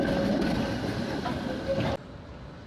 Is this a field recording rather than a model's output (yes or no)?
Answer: yes